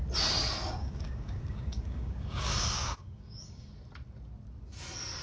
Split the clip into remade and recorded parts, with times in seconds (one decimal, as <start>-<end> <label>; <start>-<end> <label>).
0.0-0.8 recorded; 0.8-3.7 remade; 3.7-5.2 recorded